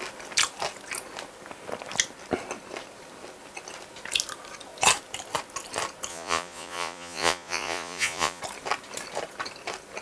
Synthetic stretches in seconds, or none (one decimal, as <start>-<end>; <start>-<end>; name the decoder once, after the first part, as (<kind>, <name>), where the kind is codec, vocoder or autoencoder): 6.1-8.4 (vocoder, Vocos)